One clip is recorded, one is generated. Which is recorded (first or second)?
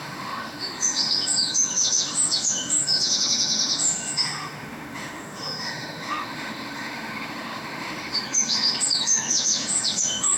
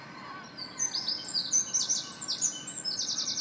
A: second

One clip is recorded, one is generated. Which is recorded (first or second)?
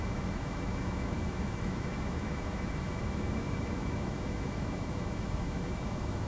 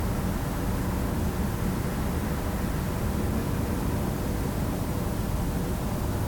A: second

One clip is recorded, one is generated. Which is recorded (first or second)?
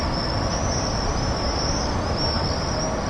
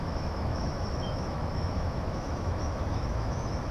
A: first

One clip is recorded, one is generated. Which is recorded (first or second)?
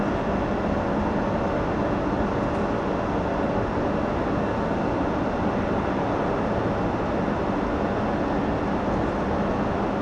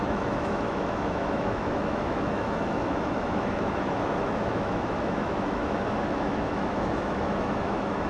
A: first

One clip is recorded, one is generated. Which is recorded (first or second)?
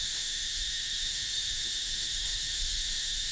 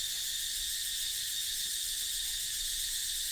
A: second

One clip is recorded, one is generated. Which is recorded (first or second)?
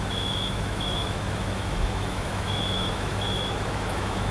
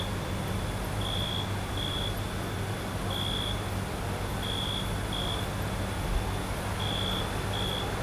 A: second